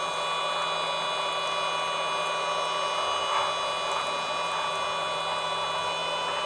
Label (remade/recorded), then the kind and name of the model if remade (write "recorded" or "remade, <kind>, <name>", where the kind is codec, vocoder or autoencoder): recorded